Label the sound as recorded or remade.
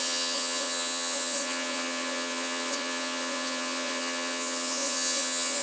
remade